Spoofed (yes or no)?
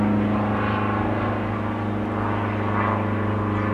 no